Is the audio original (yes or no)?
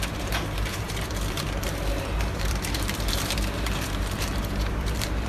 no